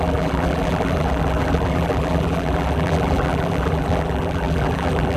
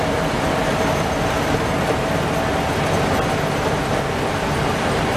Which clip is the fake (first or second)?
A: first